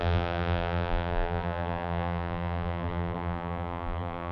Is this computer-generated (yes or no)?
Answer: yes